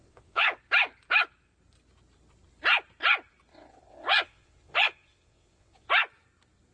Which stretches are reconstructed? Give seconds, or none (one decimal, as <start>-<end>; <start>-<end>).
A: 0.0-0.6; 3.5-5.9